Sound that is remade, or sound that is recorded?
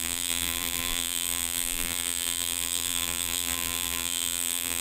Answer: remade